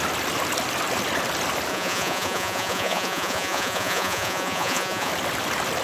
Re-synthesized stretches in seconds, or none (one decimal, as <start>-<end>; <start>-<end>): 1.7-5.1

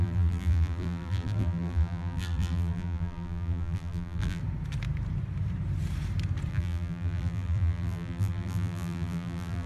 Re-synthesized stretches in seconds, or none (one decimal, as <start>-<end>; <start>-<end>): 0.0-4.4; 6.5-9.7

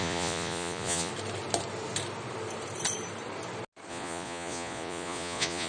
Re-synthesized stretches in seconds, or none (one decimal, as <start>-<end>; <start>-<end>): 0.0-1.1; 3.9-5.7

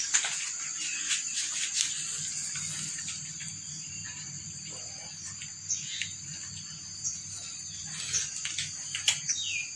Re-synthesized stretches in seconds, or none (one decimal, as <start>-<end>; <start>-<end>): 3.5-5.3

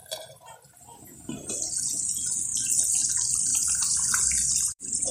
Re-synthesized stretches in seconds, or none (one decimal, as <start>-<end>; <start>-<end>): 0.0-1.5; 3.5-5.1

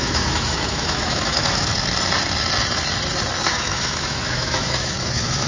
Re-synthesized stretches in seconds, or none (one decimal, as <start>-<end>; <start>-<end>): 0.0-1.7; 3.5-5.5

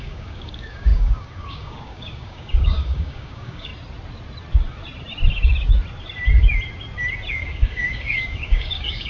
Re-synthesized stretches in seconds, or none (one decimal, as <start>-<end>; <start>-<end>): 0.0-3.7; 7.3-9.1

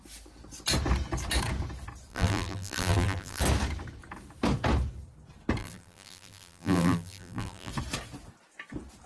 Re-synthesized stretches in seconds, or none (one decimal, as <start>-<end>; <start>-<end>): 2.1-3.4; 5.6-7.7